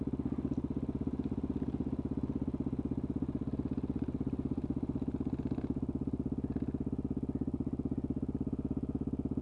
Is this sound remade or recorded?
recorded